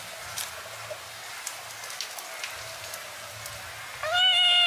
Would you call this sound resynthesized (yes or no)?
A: no